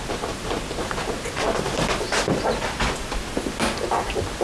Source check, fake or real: real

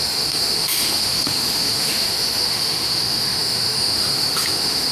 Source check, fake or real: fake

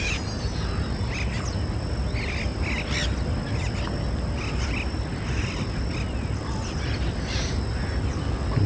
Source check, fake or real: real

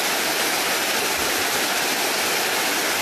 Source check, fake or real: real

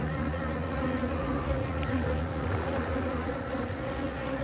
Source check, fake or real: fake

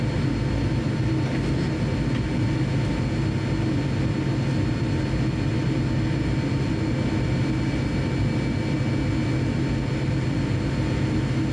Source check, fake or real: real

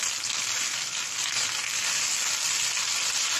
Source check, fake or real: real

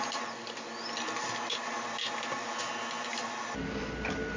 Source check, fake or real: real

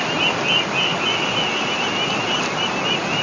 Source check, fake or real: real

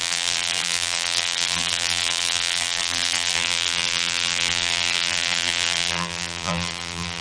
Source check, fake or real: fake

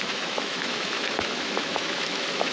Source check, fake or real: fake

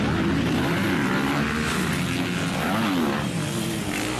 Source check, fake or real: real